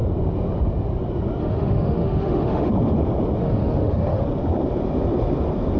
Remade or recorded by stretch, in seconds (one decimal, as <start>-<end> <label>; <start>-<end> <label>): 0.0-1.4 recorded; 1.4-2.7 remade; 2.7-3.4 recorded; 3.4-4.2 remade; 4.2-5.8 recorded